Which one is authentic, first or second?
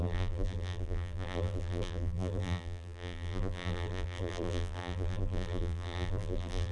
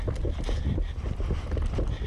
second